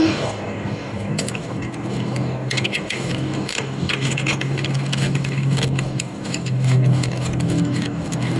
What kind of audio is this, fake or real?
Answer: fake